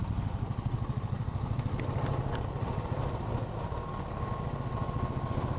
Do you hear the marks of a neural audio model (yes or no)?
no